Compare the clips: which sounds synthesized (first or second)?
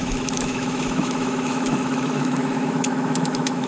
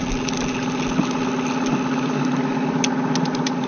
first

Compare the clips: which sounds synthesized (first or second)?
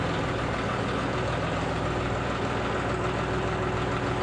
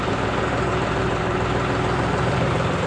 second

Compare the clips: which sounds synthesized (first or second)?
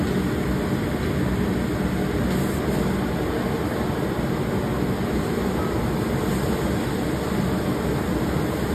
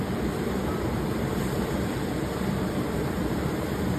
second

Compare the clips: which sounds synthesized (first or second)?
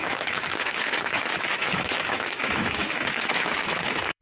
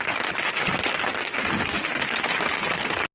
first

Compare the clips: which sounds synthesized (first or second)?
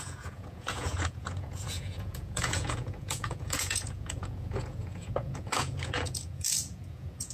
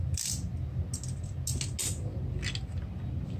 first